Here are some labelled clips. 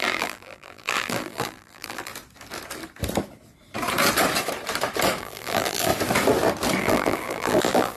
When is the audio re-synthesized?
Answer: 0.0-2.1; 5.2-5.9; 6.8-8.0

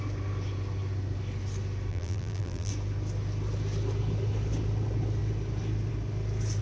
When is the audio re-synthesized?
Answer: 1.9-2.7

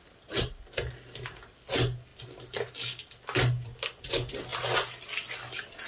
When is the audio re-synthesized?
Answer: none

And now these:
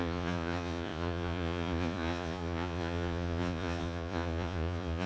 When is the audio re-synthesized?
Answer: 0.0-5.1

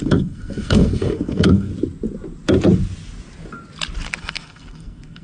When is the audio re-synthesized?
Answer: 0.0-1.7; 4.2-5.2

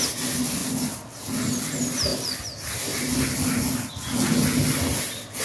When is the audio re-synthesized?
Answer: 0.6-1.2

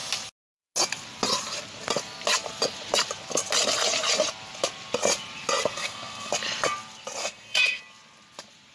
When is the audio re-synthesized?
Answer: 5.7-6.3; 7.2-7.8